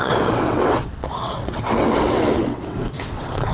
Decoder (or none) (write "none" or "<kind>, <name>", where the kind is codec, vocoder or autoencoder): vocoder, WaveNeXt